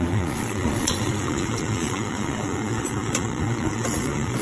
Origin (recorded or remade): remade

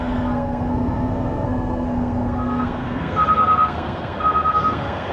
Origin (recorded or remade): remade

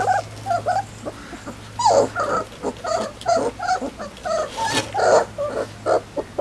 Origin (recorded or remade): recorded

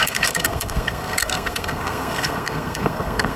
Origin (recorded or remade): remade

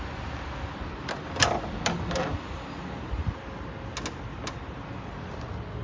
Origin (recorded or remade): recorded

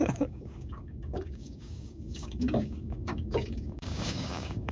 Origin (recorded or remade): remade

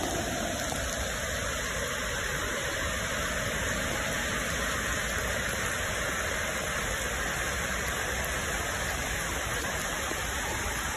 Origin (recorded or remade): recorded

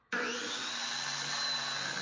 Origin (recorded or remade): recorded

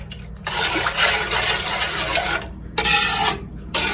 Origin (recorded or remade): recorded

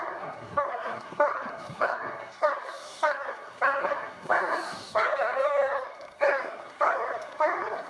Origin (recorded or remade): remade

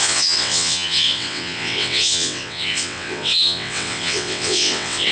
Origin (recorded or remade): remade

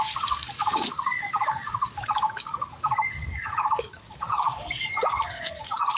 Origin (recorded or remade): remade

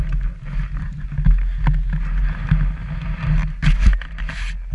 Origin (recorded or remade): recorded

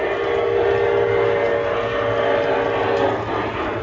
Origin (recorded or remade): recorded